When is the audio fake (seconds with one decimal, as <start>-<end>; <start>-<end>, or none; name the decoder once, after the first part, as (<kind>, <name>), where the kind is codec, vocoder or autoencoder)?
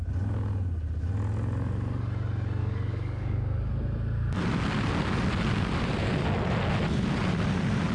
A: 2.6-3.7 (codec, DAC)